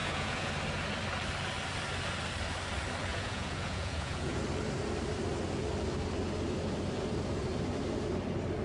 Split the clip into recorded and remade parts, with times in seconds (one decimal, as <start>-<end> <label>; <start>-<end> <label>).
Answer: 0.0-0.5 remade; 0.5-3.1 recorded; 3.1-4.4 remade; 4.4-8.6 recorded